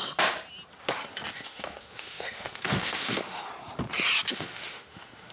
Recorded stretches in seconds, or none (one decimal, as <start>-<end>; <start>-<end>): 0.0-1.3; 3.5-4.3